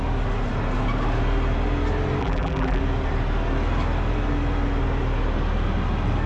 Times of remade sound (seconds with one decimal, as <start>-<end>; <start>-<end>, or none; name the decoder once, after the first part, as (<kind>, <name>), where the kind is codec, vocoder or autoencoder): 2.2-2.8 (vocoder, BigVGAN v2)